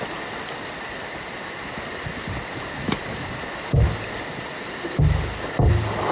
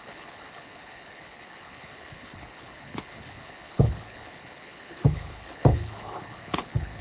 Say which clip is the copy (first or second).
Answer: second